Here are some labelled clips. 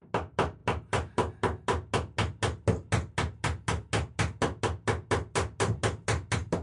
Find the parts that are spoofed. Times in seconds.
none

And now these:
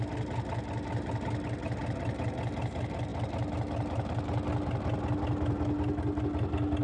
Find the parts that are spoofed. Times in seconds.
none

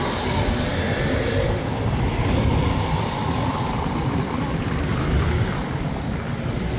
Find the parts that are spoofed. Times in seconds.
none

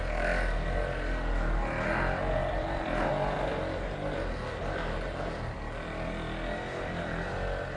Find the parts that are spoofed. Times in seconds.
2.4-3.1 (vocoder, BigVGAN v2)

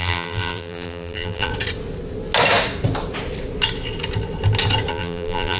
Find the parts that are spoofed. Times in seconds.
0.0-1.5 (vocoder, BigVGAN v2); 4.9-5.6